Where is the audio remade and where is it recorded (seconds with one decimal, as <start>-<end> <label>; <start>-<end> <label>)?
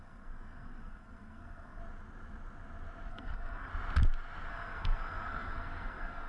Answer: 0.0-1.8 remade; 1.8-3.1 recorded; 3.1-3.7 remade; 3.7-4.5 recorded; 4.5-6.3 remade